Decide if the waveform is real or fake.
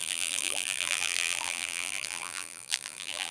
fake